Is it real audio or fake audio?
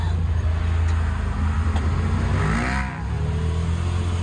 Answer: real